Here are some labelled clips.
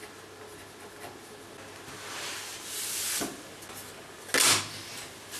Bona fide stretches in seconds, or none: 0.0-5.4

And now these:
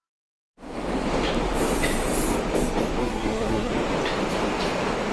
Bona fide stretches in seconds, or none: 0.0-3.0; 3.7-5.1

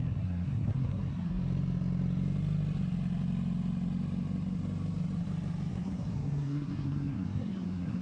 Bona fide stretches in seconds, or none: 1.4-5.7

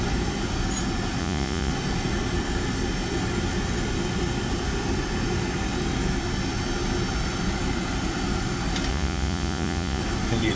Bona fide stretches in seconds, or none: 0.0-1.2; 1.7-8.9; 10.0-10.6

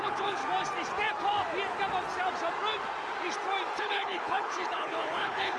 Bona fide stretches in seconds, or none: 0.4-3.8

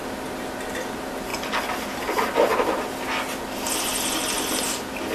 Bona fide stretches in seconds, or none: 0.0-5.1

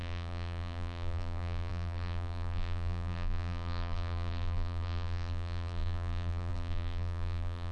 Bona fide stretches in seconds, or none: none

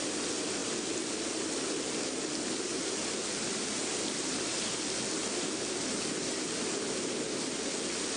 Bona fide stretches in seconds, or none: 0.0-8.2